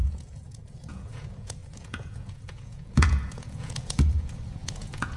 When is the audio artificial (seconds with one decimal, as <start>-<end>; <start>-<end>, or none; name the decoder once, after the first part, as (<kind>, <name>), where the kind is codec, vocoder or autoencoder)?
0.0-5.2 (vocoder, Vocos)